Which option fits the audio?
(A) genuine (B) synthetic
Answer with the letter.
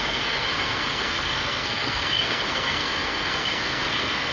B